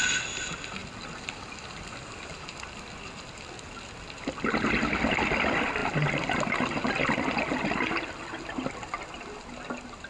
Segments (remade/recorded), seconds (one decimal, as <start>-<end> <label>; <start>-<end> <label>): 0.0-10.1 recorded